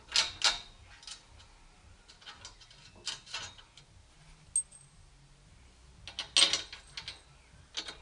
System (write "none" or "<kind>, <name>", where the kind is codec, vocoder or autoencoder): none